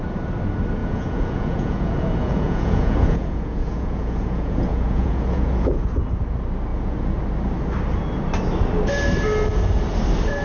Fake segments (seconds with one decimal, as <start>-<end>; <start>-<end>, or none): 0.8-6.0; 6.7-7.2